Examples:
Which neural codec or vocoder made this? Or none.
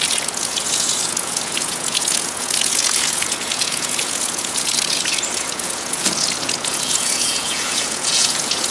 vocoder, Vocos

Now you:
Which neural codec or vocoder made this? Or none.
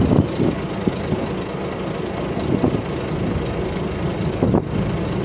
none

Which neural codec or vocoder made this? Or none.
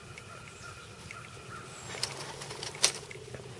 none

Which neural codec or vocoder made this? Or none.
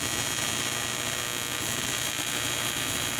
none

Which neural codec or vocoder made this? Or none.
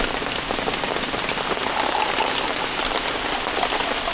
none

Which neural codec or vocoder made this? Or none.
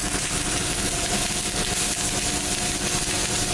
none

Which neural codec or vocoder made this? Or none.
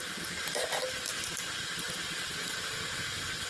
none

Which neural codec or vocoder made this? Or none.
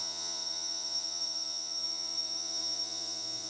vocoder, Vocos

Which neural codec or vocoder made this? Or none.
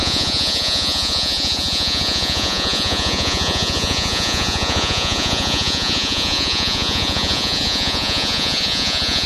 vocoder, Vocos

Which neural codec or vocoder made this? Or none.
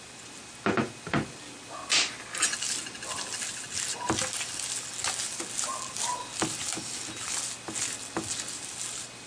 none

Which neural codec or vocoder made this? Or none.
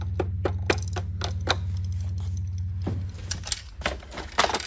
none